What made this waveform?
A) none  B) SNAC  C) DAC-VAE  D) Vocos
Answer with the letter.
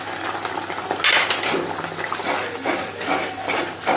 A